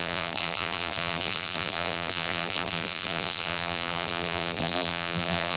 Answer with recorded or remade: remade